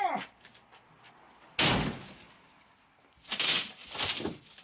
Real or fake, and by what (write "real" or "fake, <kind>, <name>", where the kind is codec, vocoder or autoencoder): real